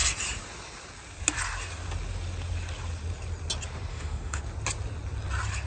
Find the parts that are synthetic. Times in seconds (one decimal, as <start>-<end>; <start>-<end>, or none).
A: 3.9-4.4